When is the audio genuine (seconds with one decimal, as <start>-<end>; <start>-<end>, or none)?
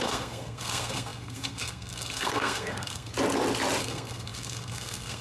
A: 3.1-3.8